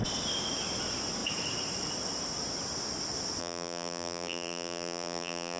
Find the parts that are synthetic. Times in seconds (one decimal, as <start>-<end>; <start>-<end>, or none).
3.4-5.6